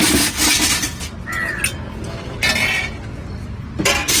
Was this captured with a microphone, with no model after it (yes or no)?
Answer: yes